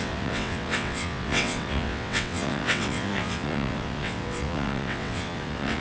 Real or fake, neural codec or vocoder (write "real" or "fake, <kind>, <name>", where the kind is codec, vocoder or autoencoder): fake, vocoder, WaveNeXt